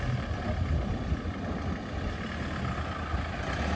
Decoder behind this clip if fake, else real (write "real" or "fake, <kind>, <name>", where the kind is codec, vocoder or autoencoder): real